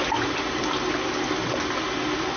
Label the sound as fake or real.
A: real